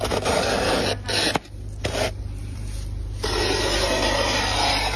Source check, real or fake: real